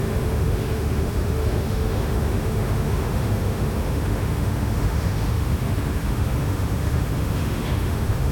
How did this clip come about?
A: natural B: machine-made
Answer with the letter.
B